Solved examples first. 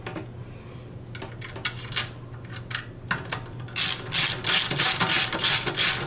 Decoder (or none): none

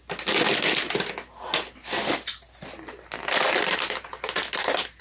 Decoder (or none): none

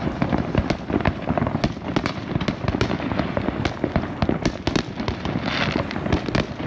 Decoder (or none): none